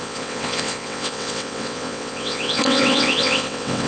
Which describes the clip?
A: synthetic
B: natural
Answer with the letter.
A